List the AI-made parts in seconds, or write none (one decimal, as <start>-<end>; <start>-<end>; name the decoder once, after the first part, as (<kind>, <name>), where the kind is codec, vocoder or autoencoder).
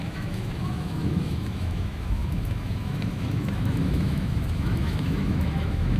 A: 0.0-6.0 (autoencoder, DAC-VAE)